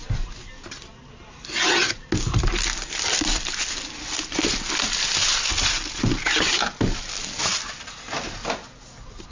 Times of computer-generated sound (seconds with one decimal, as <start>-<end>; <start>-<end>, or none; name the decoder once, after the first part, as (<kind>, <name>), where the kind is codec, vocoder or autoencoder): none